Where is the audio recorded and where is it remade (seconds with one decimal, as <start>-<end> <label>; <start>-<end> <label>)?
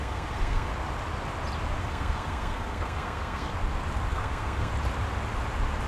0.0-0.7 remade; 0.7-1.8 recorded; 1.8-3.5 remade; 3.5-4.1 recorded; 4.1-4.7 remade; 4.7-5.9 recorded